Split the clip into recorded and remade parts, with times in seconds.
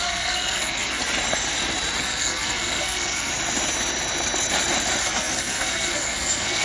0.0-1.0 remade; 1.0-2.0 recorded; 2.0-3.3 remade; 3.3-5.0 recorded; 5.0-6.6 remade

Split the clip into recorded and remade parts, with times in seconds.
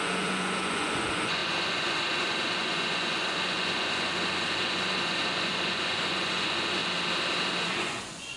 0.0-6.8 remade; 6.8-7.6 recorded; 7.6-8.4 remade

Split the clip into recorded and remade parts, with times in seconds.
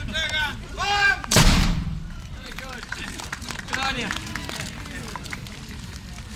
0.0-0.4 recorded; 0.4-4.2 remade; 4.2-6.4 recorded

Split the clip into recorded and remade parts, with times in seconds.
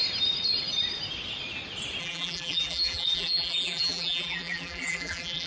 0.0-2.0 recorded; 2.0-5.5 remade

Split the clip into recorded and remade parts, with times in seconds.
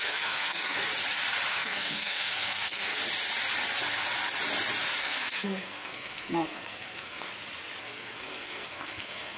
0.0-0.9 remade; 0.9-1.5 recorded; 1.5-3.0 remade; 3.0-5.0 recorded; 5.0-7.3 remade; 7.3-7.8 recorded; 7.8-9.4 remade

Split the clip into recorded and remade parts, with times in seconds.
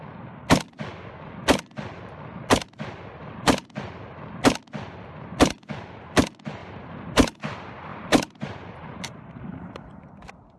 0.0-3.2 recorded; 3.2-3.8 remade; 3.8-6.6 recorded; 6.6-7.4 remade; 7.4-7.9 recorded; 7.9-10.1 remade; 10.1-10.6 recorded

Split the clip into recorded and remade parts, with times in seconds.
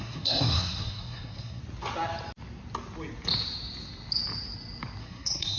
0.0-1.6 remade; 1.6-5.0 recorded; 5.0-5.6 remade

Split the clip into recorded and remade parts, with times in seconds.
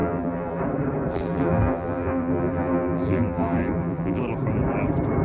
0.0-0.6 remade; 0.6-1.1 recorded; 1.1-4.2 remade; 4.2-5.2 recorded